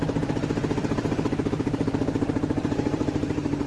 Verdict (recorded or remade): remade